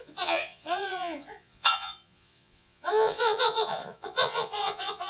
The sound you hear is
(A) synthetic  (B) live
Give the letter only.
A